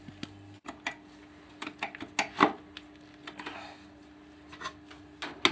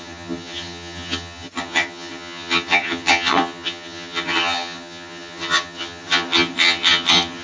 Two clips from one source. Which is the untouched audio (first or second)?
first